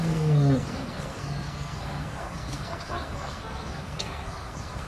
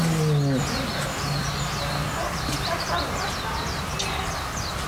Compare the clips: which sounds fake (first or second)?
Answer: first